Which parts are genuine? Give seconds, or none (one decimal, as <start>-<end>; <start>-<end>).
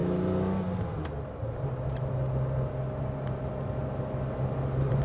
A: 0.0-3.0